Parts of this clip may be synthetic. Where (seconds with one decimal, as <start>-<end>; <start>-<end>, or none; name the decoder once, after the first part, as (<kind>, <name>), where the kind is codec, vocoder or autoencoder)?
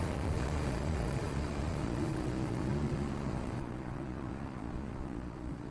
0.0-5.7 (vocoder, Vocos)